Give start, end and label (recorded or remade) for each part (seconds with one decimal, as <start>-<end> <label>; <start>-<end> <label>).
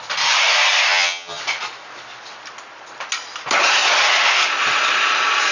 0.0-0.9 recorded; 0.9-1.4 remade; 1.4-5.5 recorded